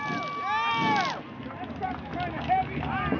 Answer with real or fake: real